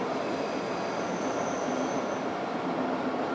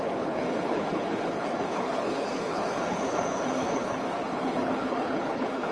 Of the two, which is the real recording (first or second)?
first